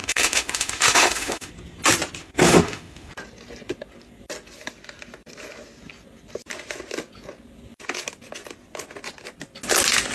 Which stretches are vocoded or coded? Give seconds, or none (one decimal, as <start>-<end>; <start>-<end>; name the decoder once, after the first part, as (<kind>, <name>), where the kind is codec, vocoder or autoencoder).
0.0-1.5 (autoencoder, DAC-VAE); 2.2-3.1